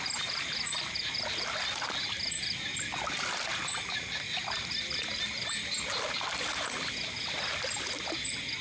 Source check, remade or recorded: recorded